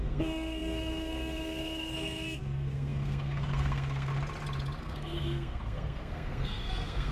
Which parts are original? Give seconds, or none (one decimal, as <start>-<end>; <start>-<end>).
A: 4.1-4.8